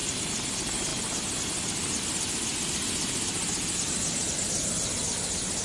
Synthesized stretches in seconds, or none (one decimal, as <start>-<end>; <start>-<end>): none